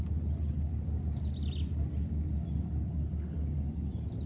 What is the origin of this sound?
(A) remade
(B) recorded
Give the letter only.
B